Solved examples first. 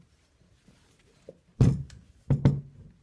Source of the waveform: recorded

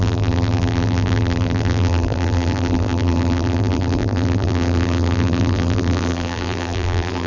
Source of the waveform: remade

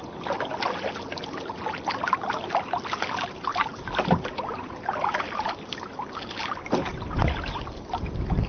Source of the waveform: recorded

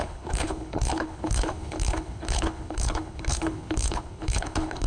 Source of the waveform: remade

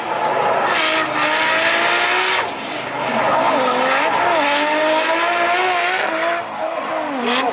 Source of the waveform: recorded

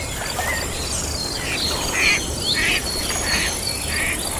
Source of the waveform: recorded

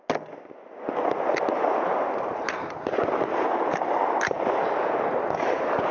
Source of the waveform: recorded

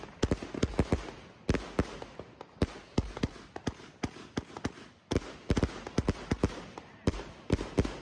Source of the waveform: recorded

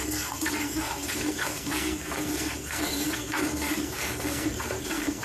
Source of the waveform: remade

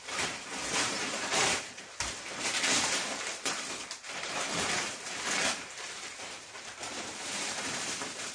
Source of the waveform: remade